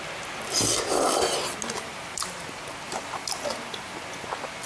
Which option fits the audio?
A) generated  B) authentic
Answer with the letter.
B